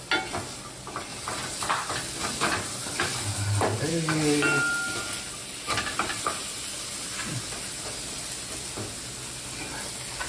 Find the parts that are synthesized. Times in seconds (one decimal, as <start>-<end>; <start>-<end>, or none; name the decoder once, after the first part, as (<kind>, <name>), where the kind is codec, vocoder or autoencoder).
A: 1.1-1.9 (vocoder, BigVGAN v2); 2.8-3.9; 5.4-6.7